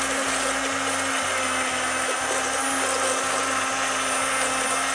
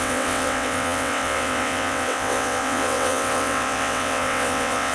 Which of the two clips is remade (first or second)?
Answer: second